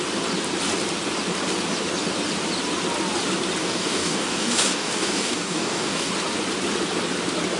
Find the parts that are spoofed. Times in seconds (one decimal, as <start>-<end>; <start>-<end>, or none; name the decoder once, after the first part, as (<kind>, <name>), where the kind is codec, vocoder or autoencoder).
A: 3.6-6.1 (codec, DAC)